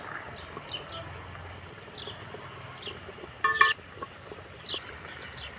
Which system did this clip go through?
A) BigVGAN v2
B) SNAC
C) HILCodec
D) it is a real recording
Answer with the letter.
D